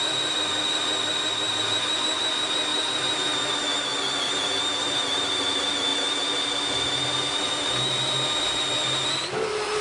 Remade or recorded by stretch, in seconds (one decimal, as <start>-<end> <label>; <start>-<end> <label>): 0.0-9.8 recorded